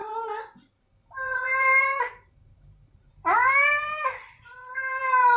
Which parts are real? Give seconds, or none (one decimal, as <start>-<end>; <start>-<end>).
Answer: 0.0-0.7